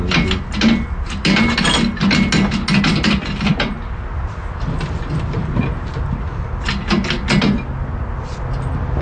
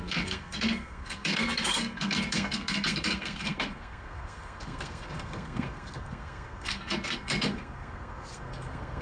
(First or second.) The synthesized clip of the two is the second